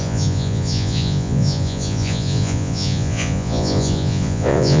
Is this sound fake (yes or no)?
yes